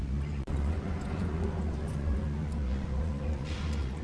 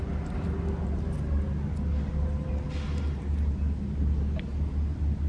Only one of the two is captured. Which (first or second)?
second